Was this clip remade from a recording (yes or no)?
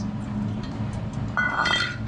no